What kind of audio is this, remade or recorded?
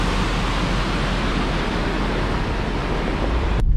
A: recorded